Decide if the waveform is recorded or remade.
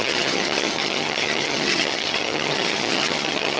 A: remade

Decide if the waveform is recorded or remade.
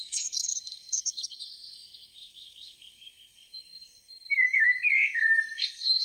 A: remade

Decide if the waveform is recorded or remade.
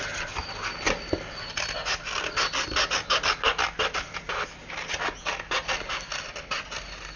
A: recorded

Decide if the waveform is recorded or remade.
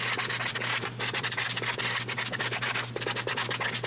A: recorded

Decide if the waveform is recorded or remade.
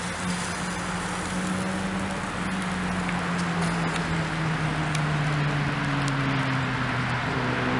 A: recorded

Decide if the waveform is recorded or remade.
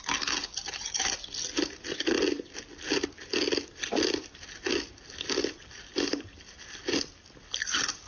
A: recorded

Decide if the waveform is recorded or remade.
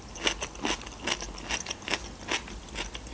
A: recorded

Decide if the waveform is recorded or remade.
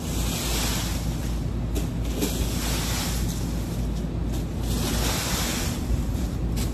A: recorded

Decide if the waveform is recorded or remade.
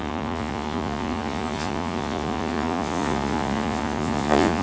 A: remade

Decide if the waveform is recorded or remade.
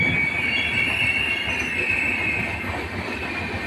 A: recorded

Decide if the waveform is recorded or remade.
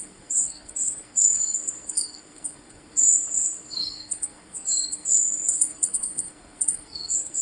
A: remade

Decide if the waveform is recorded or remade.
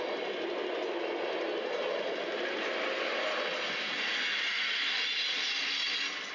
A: recorded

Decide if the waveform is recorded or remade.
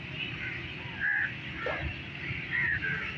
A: recorded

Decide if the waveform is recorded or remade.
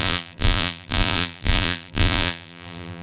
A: remade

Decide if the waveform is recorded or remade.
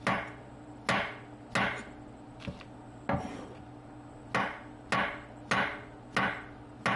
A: recorded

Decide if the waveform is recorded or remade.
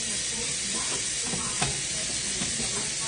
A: recorded